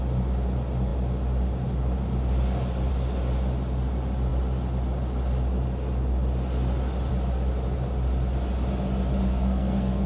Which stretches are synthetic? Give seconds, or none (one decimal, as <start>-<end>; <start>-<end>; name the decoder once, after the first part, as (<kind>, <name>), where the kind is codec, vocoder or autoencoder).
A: 9.3-10.1 (codec, SNAC)